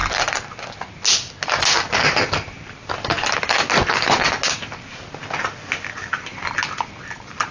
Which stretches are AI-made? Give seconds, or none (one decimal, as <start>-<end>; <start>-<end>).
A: none